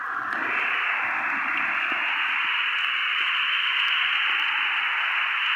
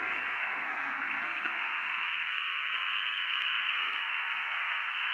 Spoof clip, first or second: second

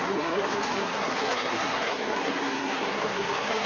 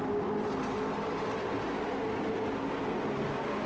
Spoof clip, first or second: first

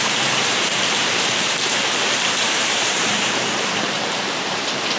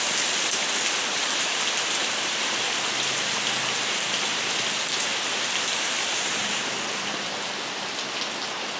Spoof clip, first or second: first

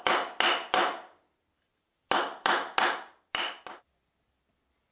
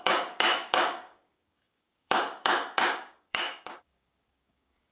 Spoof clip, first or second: second